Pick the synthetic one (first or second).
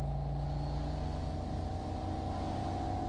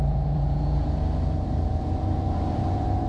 second